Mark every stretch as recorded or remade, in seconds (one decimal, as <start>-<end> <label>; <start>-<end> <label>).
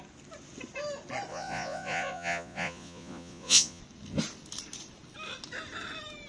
0.0-1.3 recorded; 1.3-3.8 remade; 3.8-6.3 recorded